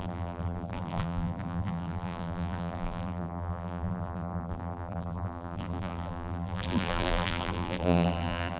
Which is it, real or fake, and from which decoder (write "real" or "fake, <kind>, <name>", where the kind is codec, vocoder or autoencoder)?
fake, vocoder, BigVGAN v2